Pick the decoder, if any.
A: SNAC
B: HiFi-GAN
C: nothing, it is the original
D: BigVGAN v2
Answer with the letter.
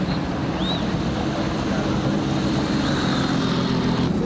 C